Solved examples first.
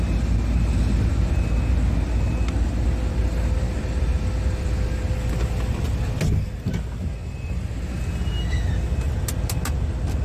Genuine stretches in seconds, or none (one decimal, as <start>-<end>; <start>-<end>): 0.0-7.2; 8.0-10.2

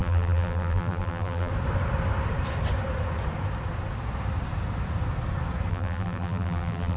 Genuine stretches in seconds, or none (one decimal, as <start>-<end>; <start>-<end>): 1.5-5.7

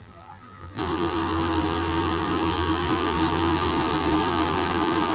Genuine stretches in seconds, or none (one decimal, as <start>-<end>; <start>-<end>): none